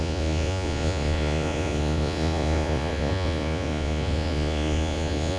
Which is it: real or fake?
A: fake